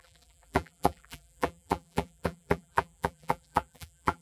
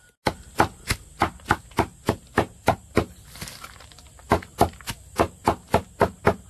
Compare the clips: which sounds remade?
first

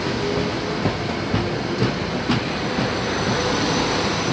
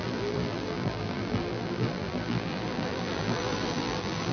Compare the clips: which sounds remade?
second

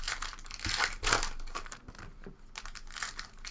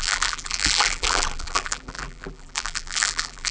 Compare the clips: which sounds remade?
second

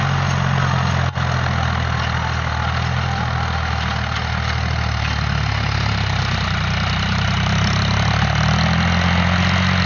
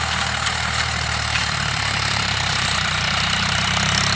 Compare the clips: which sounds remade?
second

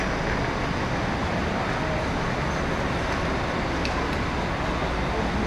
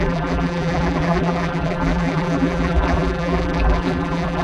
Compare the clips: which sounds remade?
second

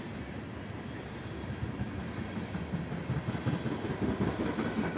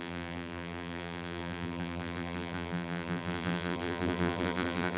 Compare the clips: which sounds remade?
second